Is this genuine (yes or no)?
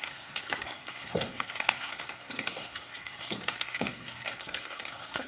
no